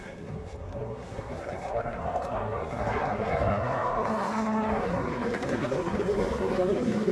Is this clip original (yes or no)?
no